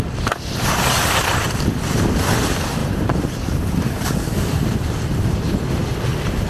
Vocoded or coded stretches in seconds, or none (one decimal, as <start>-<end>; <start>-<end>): 2.8-5.5